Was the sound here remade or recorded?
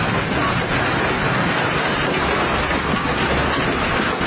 recorded